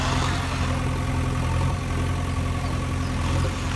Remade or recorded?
recorded